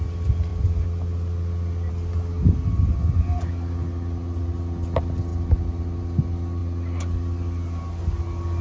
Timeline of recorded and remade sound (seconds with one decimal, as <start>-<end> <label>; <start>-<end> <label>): 0.0-8.6 recorded